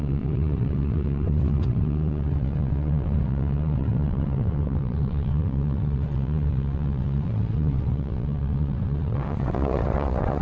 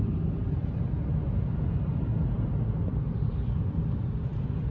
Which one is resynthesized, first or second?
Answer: first